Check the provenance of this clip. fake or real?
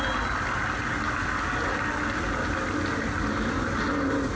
real